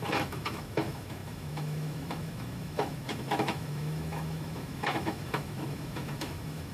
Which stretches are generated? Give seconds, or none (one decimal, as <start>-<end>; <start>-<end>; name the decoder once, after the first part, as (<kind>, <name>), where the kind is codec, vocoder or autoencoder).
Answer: 0.0-6.7 (autoencoder, DAC-VAE)